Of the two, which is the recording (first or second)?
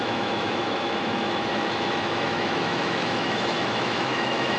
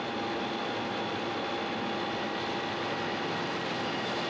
second